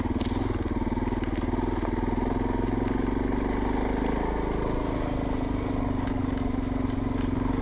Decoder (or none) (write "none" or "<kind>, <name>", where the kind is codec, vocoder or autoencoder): none